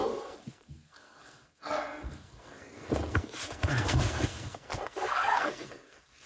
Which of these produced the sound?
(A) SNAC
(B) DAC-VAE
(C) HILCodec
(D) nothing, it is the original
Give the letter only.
A